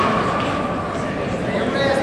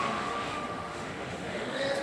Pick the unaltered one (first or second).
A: first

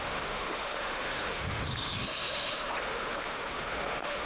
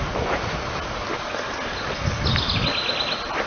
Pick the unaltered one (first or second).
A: second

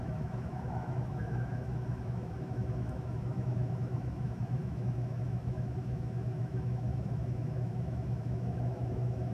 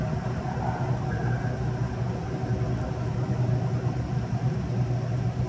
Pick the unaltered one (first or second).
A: second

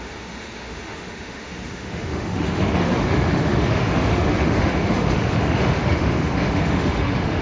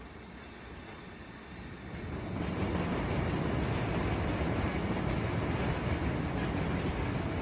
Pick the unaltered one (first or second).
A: second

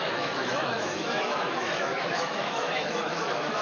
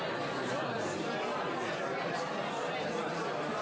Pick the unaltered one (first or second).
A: second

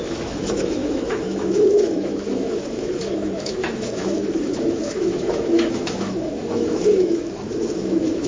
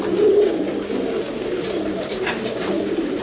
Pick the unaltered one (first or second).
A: second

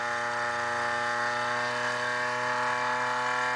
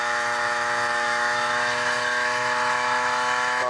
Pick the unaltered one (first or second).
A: first